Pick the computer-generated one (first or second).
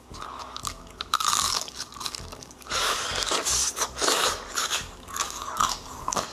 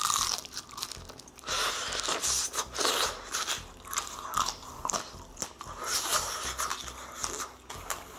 first